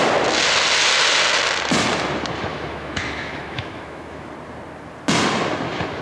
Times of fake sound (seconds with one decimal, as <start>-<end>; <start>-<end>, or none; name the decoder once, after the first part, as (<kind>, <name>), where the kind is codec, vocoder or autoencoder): 2.5-4.3 (autoencoder, DAC-VAE)